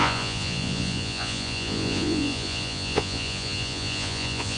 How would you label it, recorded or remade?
remade